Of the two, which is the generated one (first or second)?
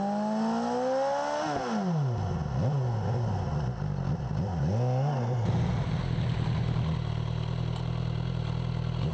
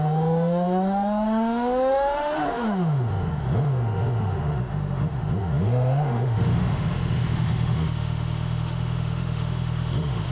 second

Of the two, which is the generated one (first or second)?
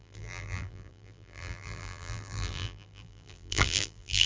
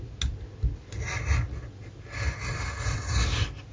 first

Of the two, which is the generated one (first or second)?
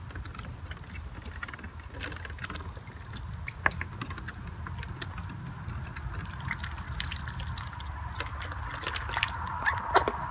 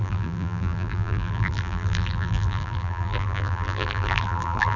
second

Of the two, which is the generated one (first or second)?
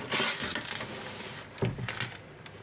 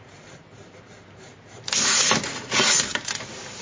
second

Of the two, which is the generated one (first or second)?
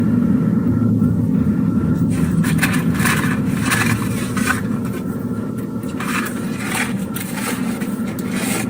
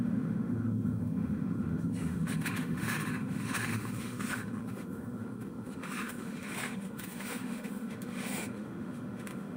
second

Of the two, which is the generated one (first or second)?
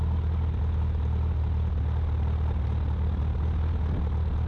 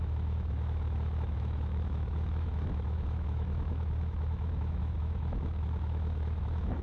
second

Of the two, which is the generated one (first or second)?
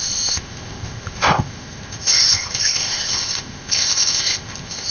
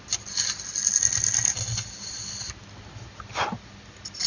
first